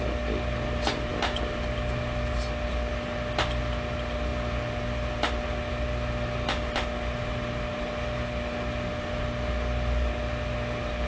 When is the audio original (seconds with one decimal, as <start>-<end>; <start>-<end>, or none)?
0.0-11.1